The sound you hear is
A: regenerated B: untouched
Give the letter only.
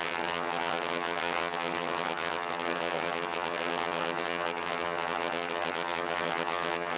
A